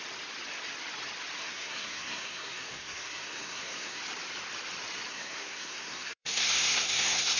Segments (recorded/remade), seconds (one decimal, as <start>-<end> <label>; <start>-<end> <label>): 0.0-1.4 recorded; 1.4-4.0 remade; 4.0-5.1 recorded; 5.1-7.4 remade